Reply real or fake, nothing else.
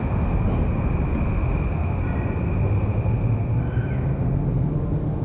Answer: real